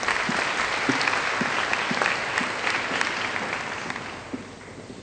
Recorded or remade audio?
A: recorded